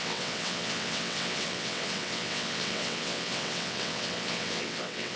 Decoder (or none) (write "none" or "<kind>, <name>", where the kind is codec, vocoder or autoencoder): vocoder, WaveNeXt